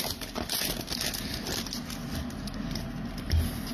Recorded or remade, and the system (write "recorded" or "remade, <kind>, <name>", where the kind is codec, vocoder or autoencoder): recorded